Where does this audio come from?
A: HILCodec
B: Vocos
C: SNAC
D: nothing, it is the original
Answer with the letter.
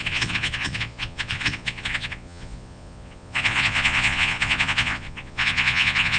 B